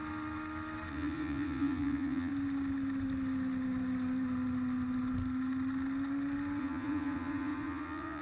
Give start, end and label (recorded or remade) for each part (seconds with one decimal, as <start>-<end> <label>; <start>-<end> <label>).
0.0-0.9 recorded; 0.9-2.3 remade; 2.3-6.6 recorded; 6.6-8.2 remade